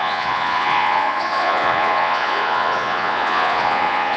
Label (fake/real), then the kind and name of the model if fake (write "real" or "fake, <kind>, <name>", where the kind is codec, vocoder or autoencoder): fake, vocoder, Vocos